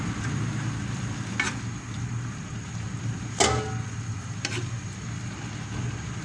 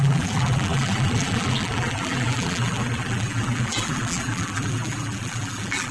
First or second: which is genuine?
first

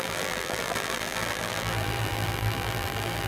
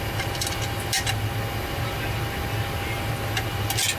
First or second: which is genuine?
second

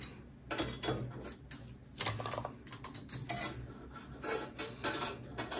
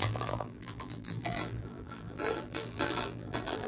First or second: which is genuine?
first